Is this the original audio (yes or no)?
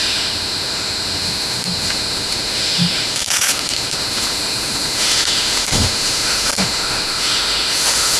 no